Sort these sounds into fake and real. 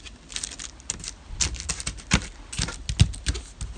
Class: real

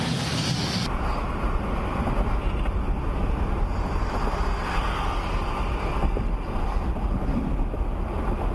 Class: real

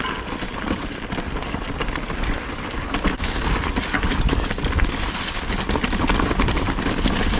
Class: real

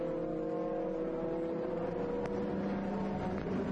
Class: real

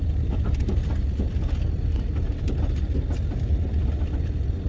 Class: real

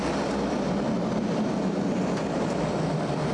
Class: fake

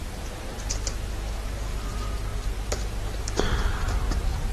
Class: real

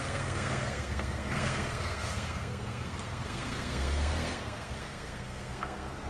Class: fake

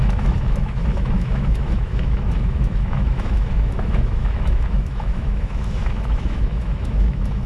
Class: fake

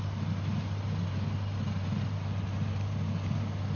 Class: real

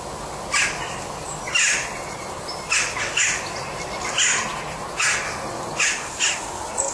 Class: real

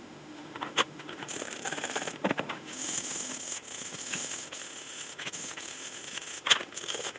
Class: fake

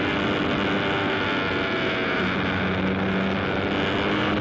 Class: real